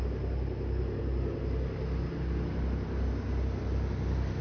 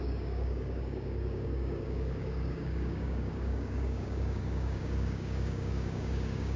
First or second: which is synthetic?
second